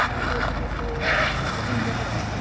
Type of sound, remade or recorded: recorded